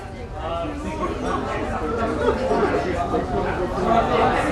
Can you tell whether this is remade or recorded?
recorded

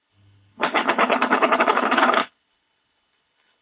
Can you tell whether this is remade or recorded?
remade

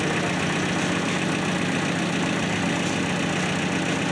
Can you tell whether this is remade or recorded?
recorded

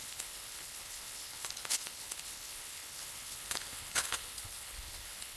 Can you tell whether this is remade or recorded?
remade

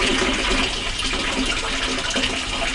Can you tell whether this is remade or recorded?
recorded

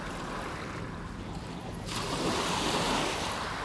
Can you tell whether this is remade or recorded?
recorded